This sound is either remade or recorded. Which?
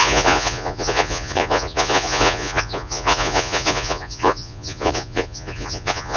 remade